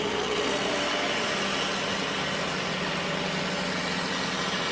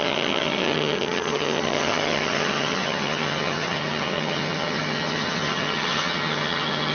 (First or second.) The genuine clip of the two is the first